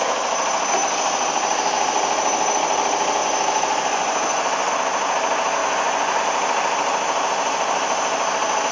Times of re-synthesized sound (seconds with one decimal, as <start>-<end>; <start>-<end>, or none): 3.2-4.7; 5.6-6.2